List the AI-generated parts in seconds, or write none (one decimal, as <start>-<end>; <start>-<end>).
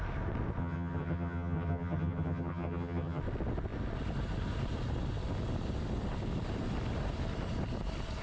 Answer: 0.6-3.2